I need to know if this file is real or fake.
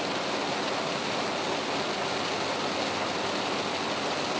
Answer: real